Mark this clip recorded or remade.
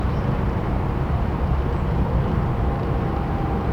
remade